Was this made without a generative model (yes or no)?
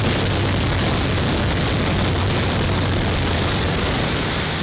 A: yes